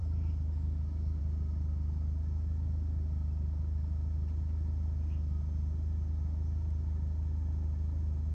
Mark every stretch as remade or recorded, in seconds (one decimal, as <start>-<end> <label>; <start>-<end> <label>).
0.0-1.2 remade; 1.2-8.3 recorded